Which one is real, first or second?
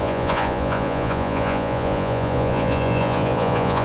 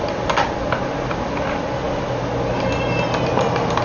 second